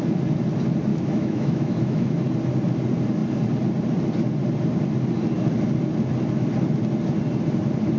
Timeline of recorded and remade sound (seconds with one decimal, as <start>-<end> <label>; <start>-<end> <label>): 0.0-0.9 recorded; 0.9-2.2 remade; 2.2-8.0 recorded